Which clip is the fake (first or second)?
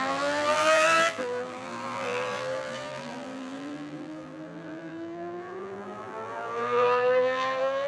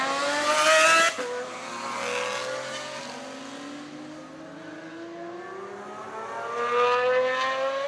first